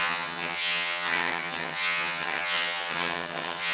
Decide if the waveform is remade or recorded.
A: remade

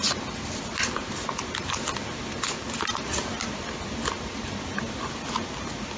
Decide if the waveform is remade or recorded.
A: recorded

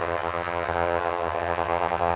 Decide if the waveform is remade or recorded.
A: remade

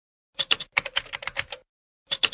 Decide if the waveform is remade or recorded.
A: recorded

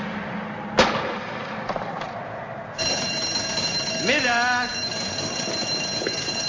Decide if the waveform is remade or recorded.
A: recorded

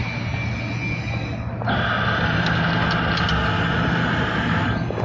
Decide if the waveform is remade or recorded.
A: recorded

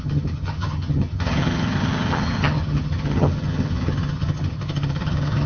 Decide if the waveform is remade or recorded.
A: remade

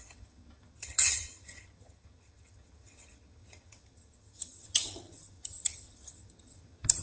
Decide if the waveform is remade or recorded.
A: remade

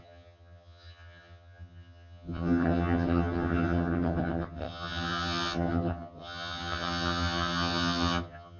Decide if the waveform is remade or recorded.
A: remade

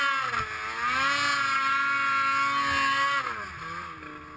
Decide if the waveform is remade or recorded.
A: recorded